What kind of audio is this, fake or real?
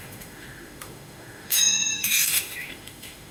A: fake